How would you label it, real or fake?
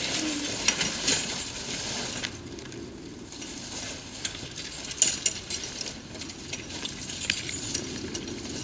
real